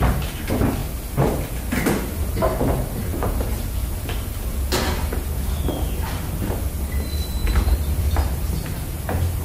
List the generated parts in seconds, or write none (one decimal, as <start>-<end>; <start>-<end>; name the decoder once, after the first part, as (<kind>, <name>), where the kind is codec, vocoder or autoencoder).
7.4-9.0 (vocoder, BigVGAN v2)